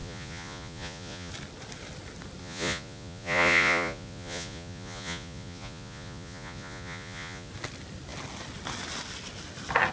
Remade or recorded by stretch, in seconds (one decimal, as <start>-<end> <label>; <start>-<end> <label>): 0.0-1.3 remade; 1.3-2.4 recorded; 2.4-7.5 remade; 7.5-9.9 recorded